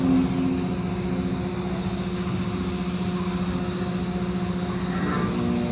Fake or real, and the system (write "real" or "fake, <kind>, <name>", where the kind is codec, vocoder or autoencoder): real